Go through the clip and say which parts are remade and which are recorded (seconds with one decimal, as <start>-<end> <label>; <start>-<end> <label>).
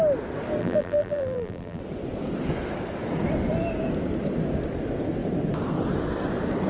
0.0-0.6 recorded; 0.6-1.8 remade; 1.8-6.7 recorded